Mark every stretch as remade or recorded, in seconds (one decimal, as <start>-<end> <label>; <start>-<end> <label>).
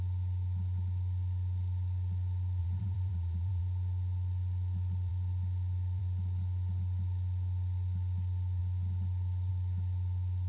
0.0-2.6 recorded; 2.6-3.6 remade; 3.6-10.5 recorded